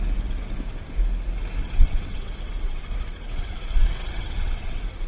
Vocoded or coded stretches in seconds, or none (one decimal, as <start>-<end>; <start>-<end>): 1.6-5.1